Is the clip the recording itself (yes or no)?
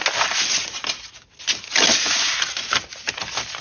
yes